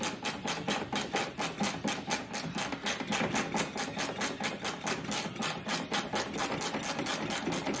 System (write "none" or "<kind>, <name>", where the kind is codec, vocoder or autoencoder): none